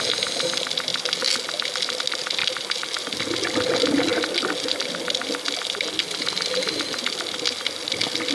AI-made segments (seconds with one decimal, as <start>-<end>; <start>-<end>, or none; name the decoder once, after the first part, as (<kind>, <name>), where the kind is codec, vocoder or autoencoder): none